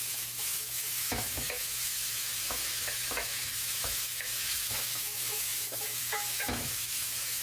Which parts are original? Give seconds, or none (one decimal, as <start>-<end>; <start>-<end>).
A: none

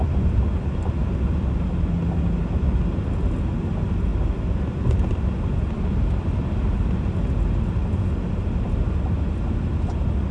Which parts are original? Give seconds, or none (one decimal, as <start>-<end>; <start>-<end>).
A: 0.0-10.3

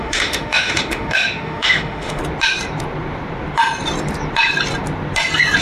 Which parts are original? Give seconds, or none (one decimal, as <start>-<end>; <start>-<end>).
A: 2.2-5.6